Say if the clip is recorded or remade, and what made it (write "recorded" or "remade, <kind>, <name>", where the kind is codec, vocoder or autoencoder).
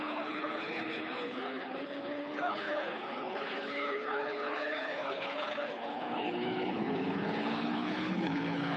remade, codec, HILCodec